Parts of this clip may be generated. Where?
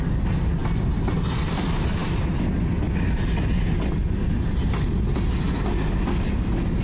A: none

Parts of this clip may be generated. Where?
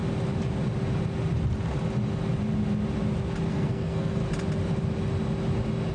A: 3.5-4.2 (codec, SNAC)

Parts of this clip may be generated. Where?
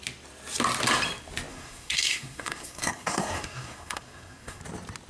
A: 1.5-4.6 (codec, SNAC)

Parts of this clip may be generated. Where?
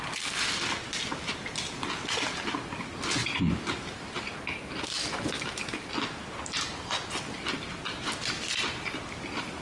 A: none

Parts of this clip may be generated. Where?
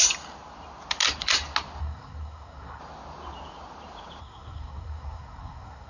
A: 1.8-2.8 (codec, SNAC); 4.2-5.9